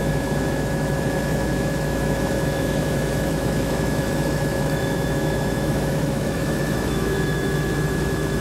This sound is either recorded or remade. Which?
remade